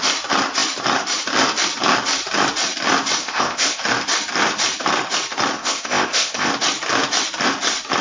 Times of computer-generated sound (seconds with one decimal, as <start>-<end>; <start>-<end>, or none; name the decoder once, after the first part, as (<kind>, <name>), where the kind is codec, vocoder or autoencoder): 3.2-3.8 (codec, ZipCodec); 5.6-6.5